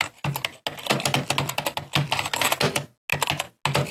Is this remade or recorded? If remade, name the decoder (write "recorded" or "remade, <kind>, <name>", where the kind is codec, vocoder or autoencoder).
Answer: recorded